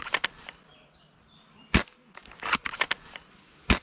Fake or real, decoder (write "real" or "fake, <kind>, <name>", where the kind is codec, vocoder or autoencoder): real